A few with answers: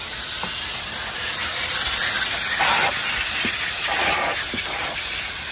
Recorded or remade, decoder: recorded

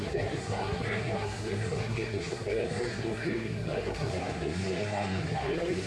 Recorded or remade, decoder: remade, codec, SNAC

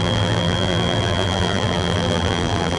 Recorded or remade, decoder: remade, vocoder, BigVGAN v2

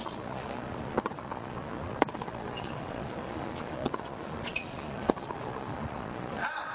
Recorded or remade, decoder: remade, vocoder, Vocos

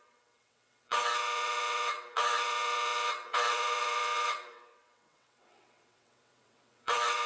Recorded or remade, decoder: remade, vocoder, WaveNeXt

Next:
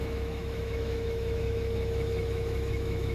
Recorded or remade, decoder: remade, autoencoder, DAC-VAE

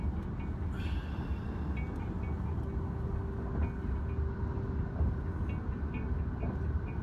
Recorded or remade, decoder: recorded